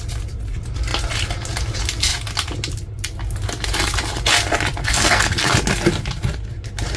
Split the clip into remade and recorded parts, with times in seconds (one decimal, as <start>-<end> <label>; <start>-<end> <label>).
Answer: 0.0-4.8 recorded; 4.8-5.4 remade; 5.4-7.0 recorded